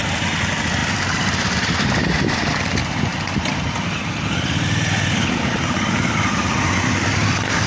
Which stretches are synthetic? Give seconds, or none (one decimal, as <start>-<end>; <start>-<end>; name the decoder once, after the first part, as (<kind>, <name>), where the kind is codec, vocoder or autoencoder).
0.0-7.7 (vocoder, BigVGAN v2)